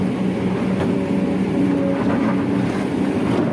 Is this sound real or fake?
real